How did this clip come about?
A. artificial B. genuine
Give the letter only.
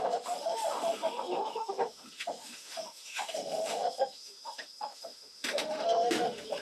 A